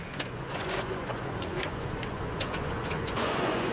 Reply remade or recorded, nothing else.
remade